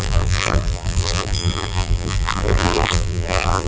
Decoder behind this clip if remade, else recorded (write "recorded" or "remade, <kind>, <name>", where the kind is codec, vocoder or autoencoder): remade, vocoder, BigVGAN v2